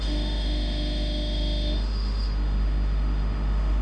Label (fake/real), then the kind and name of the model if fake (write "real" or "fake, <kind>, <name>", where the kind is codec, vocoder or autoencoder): fake, autoencoder, DAC-VAE